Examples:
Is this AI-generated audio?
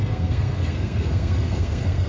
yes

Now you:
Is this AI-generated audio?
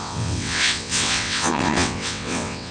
yes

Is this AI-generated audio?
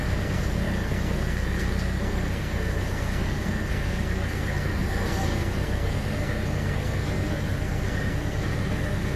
yes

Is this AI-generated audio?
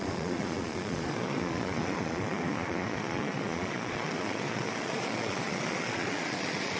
yes